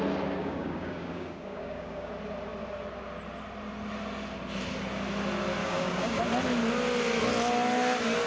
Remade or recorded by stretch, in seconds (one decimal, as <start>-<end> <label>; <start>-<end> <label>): 0.0-0.4 recorded; 0.4-2.1 remade; 2.1-5.6 recorded; 5.6-6.2 remade; 6.2-8.3 recorded